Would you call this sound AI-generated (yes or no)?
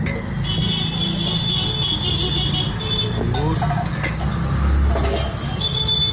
no